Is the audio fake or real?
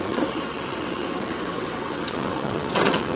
fake